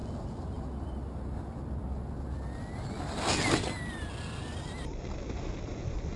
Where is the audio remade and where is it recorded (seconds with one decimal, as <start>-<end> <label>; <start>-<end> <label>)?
0.0-6.2 recorded